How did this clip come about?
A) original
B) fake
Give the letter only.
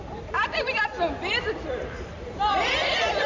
B